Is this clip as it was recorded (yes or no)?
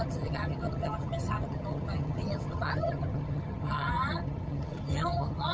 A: no